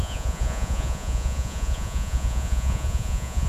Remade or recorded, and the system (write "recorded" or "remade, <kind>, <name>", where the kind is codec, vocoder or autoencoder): remade, vocoder, Vocos